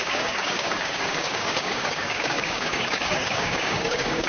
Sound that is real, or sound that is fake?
fake